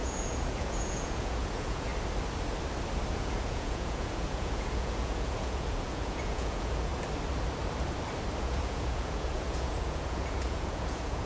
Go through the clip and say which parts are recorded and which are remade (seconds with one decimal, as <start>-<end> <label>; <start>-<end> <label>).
0.0-1.9 remade; 1.9-3.1 recorded; 3.1-6.9 remade; 6.9-8.4 recorded; 8.4-11.3 remade

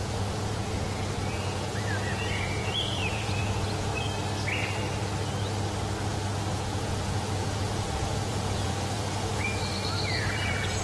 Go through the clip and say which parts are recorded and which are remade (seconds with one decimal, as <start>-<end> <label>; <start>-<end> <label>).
0.0-3.9 remade; 3.9-6.5 recorded; 6.5-10.8 remade

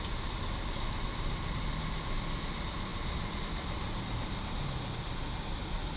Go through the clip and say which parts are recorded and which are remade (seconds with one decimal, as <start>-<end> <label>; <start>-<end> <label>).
0.0-6.0 recorded

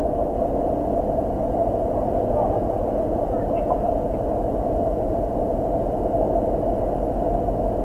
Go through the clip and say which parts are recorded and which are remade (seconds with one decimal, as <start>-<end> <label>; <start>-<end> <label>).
0.0-1.6 recorded; 1.6-5.8 remade; 5.8-7.8 recorded

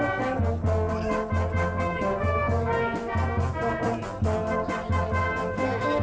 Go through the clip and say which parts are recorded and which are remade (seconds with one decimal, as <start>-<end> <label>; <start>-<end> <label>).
0.0-6.0 recorded

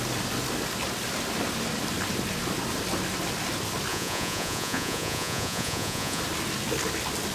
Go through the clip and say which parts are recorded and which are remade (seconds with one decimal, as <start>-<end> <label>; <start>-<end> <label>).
0.0-3.9 recorded; 3.9-6.2 remade; 6.2-7.3 recorded